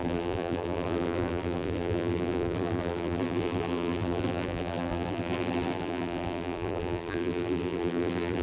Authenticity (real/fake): fake